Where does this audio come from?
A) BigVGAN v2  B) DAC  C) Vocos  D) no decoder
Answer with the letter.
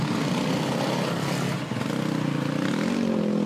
D